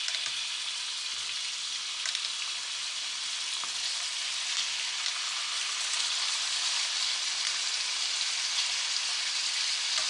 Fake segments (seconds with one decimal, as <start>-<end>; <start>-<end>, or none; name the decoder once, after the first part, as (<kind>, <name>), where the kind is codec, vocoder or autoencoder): none